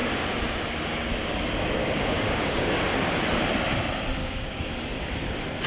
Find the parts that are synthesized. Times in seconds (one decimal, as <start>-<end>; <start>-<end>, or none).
1.8-2.7; 4.2-4.7